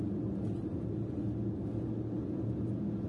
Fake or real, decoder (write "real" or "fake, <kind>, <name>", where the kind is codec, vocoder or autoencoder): real